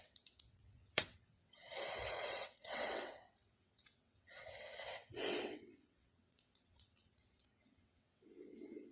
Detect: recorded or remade remade